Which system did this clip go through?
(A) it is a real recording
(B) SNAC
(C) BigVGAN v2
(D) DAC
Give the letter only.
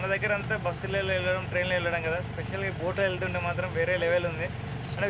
A